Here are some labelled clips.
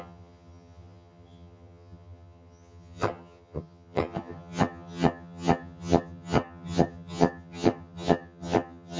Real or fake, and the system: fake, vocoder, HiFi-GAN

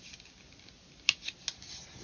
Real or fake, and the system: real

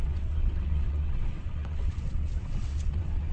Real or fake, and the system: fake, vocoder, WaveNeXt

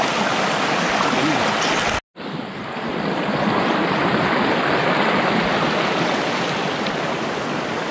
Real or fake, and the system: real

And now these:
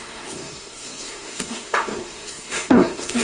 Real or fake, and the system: fake, codec, SNAC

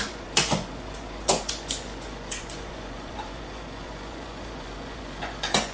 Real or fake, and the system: fake, vocoder, Vocos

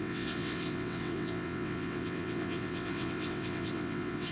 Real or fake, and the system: fake, vocoder, WaveNeXt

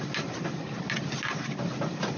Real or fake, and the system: real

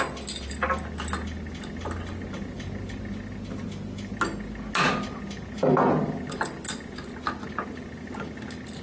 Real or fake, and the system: real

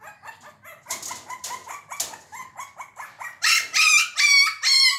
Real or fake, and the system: real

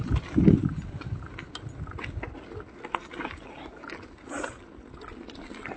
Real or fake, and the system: real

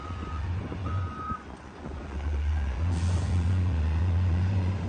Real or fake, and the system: fake, vocoder, Vocos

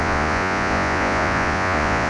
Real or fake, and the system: fake, vocoder, Vocos